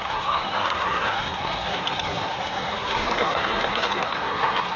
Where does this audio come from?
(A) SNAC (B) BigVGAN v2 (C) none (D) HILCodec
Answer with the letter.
A